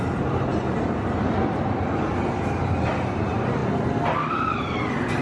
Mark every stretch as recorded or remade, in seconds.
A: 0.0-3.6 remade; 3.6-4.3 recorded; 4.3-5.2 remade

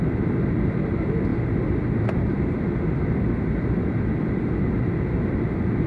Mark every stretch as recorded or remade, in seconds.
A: 0.0-5.9 recorded

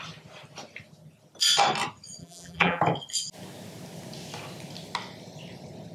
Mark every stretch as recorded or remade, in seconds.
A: 0.0-2.2 recorded; 2.2-2.8 remade; 2.8-5.9 recorded

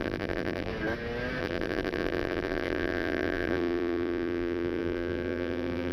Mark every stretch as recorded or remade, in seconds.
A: 0.0-0.7 remade; 0.7-1.4 recorded; 1.4-5.9 remade

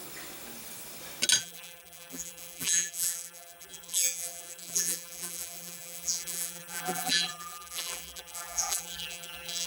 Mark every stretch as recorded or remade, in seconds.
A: 0.0-1.4 recorded; 1.4-9.7 remade

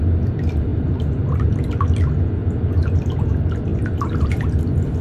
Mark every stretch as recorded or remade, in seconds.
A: 0.0-0.7 recorded; 0.7-1.7 remade; 1.7-3.7 recorded; 3.7-4.4 remade; 4.4-5.0 recorded

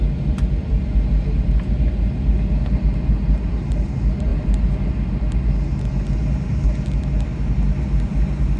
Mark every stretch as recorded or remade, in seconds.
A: 0.0-4.3 recorded; 4.3-4.9 remade; 4.9-8.6 recorded

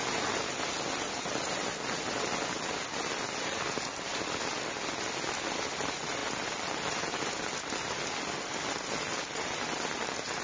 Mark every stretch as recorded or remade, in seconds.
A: 0.0-10.4 recorded